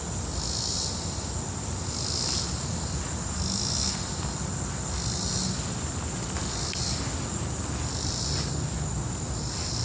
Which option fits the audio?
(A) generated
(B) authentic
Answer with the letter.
B